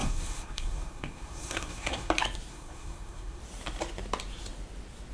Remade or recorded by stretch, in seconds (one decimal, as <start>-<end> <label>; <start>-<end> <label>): 0.0-2.1 remade; 2.1-2.5 recorded; 2.5-3.4 remade; 3.4-5.1 recorded